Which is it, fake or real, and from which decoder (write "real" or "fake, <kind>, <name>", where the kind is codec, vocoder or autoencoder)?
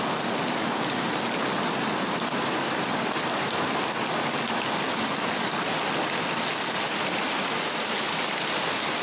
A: real